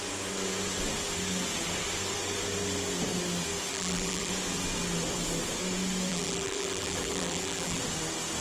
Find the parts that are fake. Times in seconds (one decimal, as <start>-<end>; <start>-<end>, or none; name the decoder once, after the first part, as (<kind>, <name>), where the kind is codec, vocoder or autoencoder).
3.7-4.3 (vocoder, BigVGAN v2); 6.1-7.8